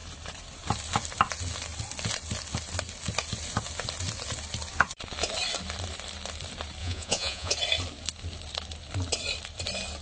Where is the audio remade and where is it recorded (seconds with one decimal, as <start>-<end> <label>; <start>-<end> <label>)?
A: 0.0-6.8 recorded; 6.8-7.5 remade; 7.5-10.0 recorded